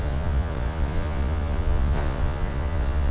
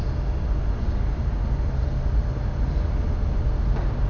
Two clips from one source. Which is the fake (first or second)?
first